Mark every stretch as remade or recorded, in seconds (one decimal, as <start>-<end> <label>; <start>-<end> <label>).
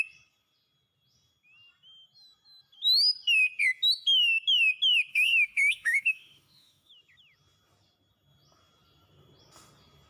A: 0.0-5.1 recorded; 5.1-6.9 remade; 6.9-10.1 recorded